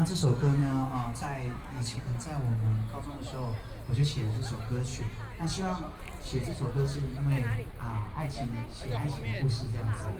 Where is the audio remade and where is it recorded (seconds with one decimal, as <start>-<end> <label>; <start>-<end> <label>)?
0.0-0.6 recorded; 0.6-2.0 remade; 2.0-10.2 recorded

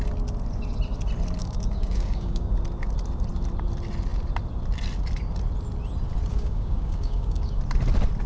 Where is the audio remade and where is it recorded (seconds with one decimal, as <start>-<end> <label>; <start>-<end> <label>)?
0.0-1.4 recorded; 1.4-2.5 remade; 2.5-6.3 recorded; 6.3-7.5 remade; 7.5-8.3 recorded

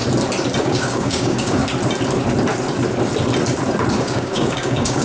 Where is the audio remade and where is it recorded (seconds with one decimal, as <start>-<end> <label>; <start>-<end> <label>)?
0.0-0.6 recorded; 0.6-1.6 remade; 1.6-4.0 recorded; 4.0-5.0 remade

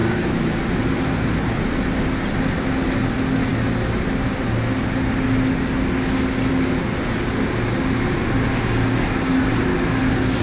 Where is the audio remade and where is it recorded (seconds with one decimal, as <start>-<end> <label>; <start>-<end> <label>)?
0.0-0.6 remade; 0.6-10.4 recorded

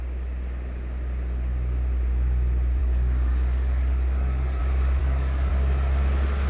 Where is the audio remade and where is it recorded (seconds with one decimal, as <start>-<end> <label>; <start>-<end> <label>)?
0.0-2.8 recorded; 2.8-4.6 remade; 4.6-5.0 recorded; 5.0-5.5 remade; 5.5-6.5 recorded

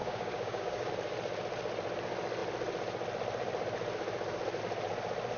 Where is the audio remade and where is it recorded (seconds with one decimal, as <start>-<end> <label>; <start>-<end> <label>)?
0.0-0.9 remade; 0.9-5.4 recorded